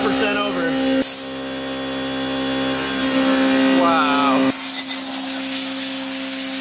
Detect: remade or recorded recorded